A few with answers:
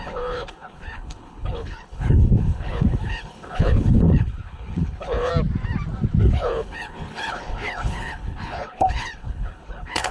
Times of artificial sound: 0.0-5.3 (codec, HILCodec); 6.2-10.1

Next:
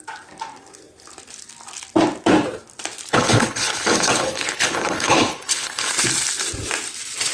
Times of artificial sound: 3.1-5.9 (codec, HILCodec)

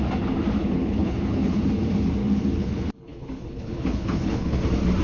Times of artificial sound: 0.6-1.6 (codec, HILCodec); 2.2-4.6

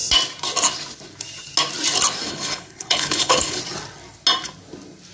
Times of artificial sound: 2.2-3.6 (codec, HILCodec)

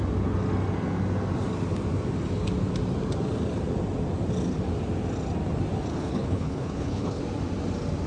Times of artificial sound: 5.9-7.2 (codec, HILCodec)

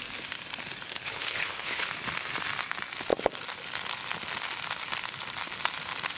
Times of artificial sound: 0.9-1.9 (codec, HILCodec)

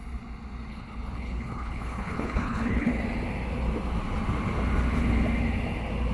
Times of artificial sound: 0.7-2.9 (codec, HILCodec)

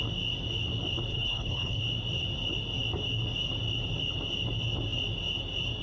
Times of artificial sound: 1.1-1.8 (codec, HILCodec)